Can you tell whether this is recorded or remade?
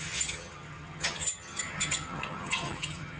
remade